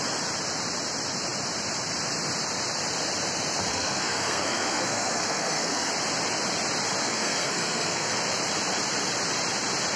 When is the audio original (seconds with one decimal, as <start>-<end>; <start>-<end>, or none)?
0.0-3.7; 5.9-7.0; 8.2-10.0